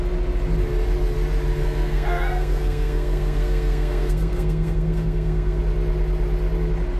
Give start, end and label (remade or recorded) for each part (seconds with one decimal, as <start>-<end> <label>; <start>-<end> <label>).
0.0-1.6 recorded; 1.6-5.6 remade; 5.6-7.0 recorded